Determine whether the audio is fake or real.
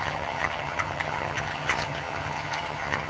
fake